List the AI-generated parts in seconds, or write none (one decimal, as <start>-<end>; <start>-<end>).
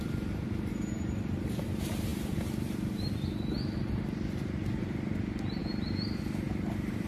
0.0-7.1